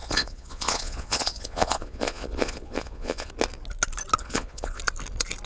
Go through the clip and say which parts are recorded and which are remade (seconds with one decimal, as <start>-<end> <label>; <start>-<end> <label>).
0.0-3.3 remade; 3.3-4.2 recorded; 4.2-4.8 remade; 4.8-5.5 recorded